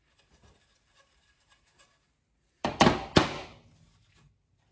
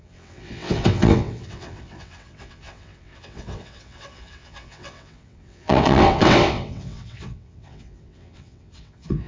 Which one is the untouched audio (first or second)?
first